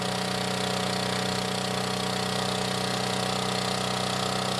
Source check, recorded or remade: recorded